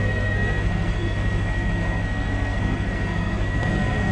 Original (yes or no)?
no